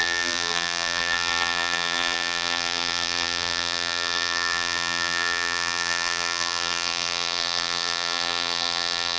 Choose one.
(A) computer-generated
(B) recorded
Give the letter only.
A